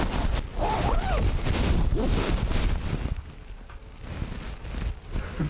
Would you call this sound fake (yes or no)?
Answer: no